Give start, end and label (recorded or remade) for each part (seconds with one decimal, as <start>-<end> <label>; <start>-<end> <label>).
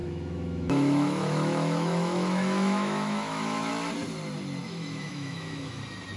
0.0-3.7 remade; 3.7-4.6 recorded; 4.6-5.8 remade; 5.8-6.2 recorded